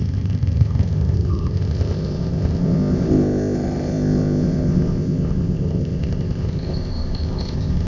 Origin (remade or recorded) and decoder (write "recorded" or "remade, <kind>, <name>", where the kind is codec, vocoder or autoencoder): remade, codec, ZipCodec